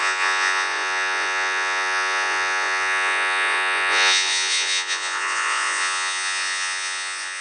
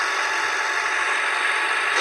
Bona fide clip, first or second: second